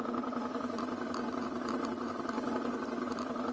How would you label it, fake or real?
real